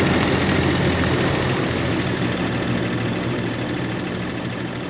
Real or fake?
real